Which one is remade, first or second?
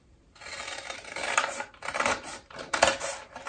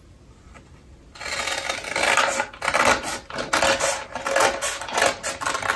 first